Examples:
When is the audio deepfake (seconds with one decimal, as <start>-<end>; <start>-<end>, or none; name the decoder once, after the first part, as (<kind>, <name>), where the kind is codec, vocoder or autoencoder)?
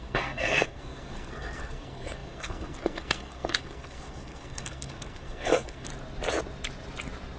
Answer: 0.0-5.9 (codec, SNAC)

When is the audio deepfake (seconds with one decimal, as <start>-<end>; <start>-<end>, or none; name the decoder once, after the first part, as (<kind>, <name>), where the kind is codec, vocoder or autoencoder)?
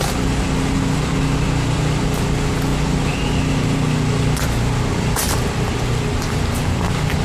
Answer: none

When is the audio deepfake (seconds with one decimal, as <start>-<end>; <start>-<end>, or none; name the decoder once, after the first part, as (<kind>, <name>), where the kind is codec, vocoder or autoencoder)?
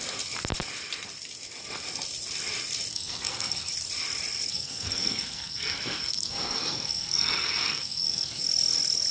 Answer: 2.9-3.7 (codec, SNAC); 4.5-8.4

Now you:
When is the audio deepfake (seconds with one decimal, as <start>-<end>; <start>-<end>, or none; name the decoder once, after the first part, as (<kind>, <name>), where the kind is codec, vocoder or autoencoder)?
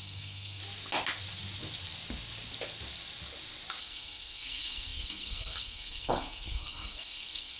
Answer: 0.0-0.6 (codec, SNAC); 3.8-7.6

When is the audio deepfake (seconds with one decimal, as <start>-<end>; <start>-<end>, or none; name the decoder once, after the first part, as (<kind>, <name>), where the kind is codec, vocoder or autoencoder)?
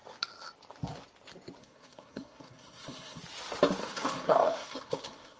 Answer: 1.6-3.2 (codec, SNAC); 3.8-5.4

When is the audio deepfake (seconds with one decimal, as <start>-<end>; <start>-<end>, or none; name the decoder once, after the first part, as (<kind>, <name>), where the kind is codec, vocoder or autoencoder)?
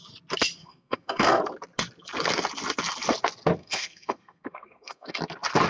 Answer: 0.6-1.4 (codec, SNAC); 3.6-5.2